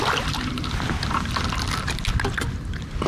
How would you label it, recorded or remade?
recorded